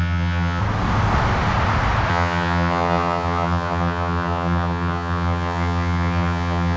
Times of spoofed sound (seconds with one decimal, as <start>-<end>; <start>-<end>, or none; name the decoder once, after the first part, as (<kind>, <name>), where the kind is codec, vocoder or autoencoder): 0.0-0.6 (vocoder, HiFi-GAN); 2.1-6.8